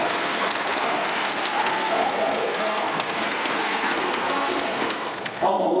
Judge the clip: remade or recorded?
remade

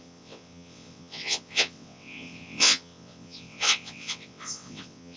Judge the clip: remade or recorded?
remade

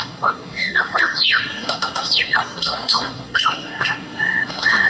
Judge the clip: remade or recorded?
remade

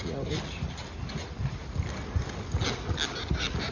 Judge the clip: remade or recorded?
recorded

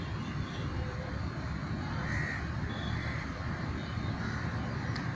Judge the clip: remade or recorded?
recorded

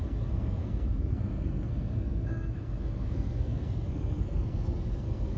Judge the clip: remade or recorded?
remade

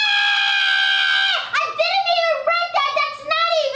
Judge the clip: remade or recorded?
recorded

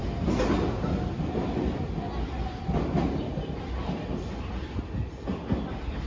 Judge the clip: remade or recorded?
recorded